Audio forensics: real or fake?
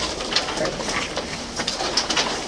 real